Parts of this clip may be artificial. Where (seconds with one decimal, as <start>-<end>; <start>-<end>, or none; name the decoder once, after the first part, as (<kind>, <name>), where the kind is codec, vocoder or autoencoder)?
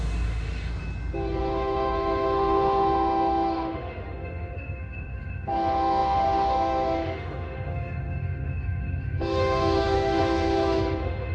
0.0-0.7 (autoencoder, DAC-VAE); 1.4-11.3